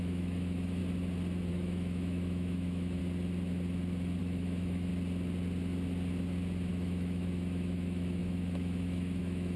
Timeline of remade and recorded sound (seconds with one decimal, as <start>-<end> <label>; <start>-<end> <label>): 0.0-0.8 remade; 0.8-1.5 recorded; 1.5-3.0 remade; 3.0-4.2 recorded; 4.2-4.9 remade; 4.9-6.7 recorded; 6.7-9.6 remade